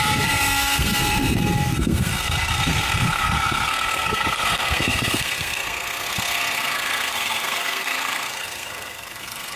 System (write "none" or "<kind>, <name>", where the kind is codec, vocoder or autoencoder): codec, SNAC